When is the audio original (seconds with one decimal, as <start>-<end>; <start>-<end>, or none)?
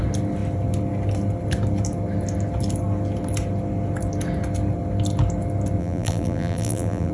0.0-5.8